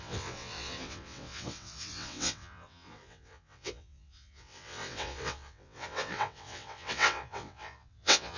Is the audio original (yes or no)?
no